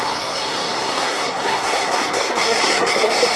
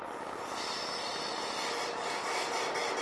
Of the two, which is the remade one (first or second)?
first